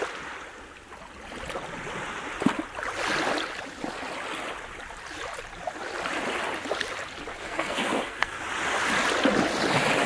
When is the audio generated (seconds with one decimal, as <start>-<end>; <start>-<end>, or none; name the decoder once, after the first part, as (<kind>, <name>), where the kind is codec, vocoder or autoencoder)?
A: 7.3-8.4 (codec, SNAC)